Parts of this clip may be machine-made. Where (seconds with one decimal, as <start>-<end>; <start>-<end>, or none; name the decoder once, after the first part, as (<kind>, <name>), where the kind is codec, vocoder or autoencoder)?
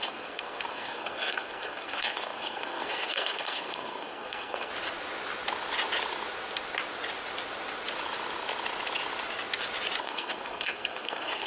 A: 0.0-4.7 (codec, SNAC); 10.0-11.5